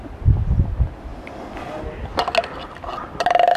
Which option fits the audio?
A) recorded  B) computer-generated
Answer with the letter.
A